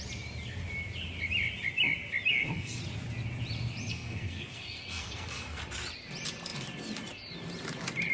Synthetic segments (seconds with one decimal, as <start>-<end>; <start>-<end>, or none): 2.3-2.8; 3.9-5.6